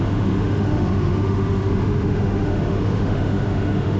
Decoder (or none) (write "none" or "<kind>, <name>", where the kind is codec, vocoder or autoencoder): autoencoder, DAC-VAE